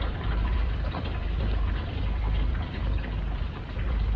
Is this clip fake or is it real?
fake